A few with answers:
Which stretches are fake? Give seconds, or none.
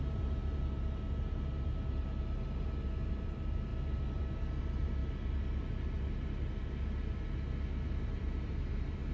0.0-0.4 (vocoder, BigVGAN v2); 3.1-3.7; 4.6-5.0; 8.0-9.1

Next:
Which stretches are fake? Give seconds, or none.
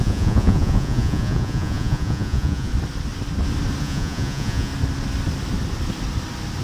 0.0-2.7 (vocoder, Vocos); 3.8-4.7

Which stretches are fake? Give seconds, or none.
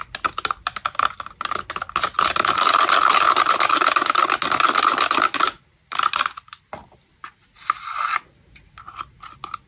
none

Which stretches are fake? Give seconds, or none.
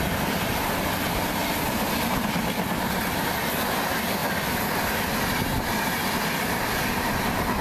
none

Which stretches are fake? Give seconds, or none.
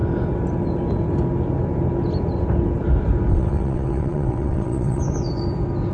3.3-5.0 (vocoder, WaveNeXt)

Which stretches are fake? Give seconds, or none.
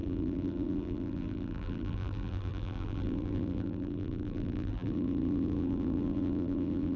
0.0-7.0 (vocoder, BigVGAN v2)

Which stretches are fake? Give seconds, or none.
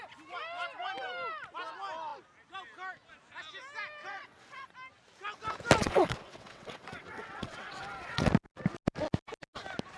4.0-4.7 (vocoder, WaveNeXt); 5.8-8.3